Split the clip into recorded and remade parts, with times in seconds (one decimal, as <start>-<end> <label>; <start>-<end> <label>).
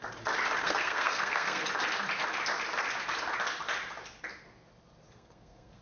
0.0-0.6 recorded; 0.6-1.6 remade; 1.6-5.1 recorded; 5.1-5.8 remade